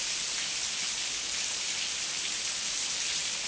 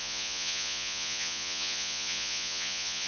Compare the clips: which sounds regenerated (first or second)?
second